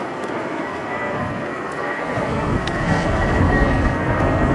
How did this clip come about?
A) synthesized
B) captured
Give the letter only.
A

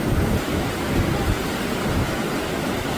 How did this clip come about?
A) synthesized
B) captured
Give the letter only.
B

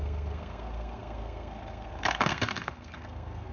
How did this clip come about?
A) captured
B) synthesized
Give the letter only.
B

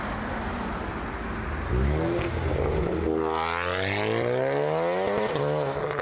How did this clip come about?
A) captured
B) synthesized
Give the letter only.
A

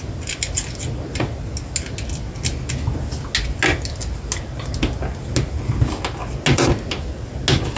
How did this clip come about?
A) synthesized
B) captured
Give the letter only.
B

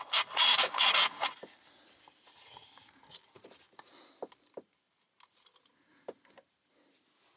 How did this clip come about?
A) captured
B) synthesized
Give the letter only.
A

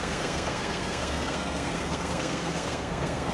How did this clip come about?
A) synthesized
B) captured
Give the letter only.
A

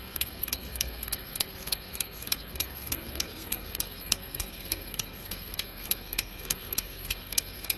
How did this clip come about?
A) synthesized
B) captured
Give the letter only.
A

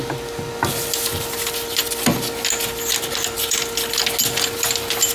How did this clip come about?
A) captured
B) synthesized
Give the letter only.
A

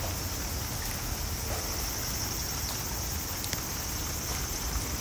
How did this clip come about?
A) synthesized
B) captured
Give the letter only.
B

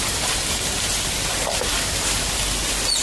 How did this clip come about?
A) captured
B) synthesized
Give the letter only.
A